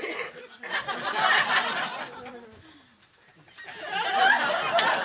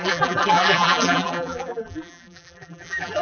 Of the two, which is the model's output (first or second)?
second